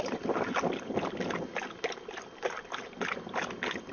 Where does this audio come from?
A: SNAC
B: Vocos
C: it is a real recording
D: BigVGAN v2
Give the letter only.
C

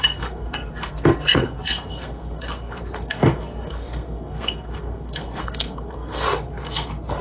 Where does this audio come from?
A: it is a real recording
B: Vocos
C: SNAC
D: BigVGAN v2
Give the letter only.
C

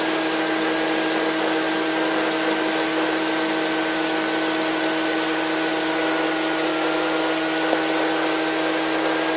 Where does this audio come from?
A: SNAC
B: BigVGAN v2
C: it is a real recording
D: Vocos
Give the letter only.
C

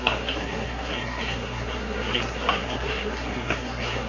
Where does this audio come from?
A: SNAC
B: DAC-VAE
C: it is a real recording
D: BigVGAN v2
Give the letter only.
A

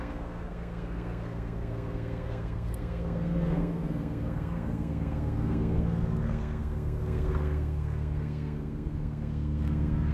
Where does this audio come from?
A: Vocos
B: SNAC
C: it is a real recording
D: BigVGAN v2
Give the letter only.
B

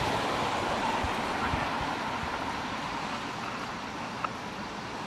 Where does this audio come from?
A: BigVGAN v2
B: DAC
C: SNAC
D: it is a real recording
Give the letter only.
D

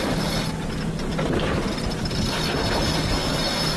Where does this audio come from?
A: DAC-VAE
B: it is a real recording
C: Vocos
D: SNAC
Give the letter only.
B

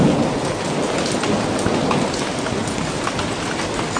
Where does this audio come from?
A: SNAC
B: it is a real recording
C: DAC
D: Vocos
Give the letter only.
B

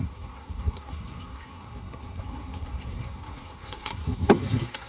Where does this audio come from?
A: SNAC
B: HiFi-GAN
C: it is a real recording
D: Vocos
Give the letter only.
A